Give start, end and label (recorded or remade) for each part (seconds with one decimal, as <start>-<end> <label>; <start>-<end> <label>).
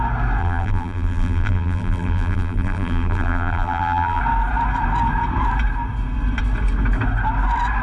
0.0-0.4 recorded; 0.4-4.2 remade; 4.2-7.8 recorded